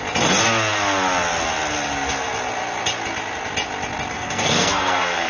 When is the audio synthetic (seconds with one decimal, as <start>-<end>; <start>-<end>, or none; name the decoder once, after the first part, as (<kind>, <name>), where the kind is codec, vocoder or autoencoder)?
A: 4.1-5.3 (codec, SNAC)